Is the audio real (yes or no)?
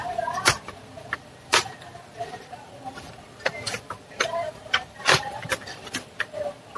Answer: no